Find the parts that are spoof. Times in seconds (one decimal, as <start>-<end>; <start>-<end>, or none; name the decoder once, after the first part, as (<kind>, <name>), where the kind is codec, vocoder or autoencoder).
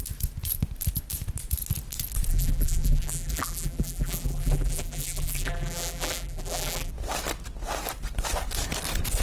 2.3-6.9 (vocoder, BigVGAN v2)